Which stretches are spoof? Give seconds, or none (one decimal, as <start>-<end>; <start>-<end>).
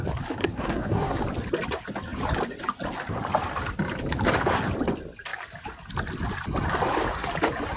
0.4-1.2